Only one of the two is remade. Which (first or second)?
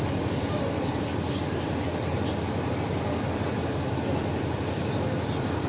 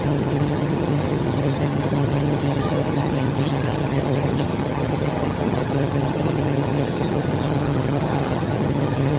second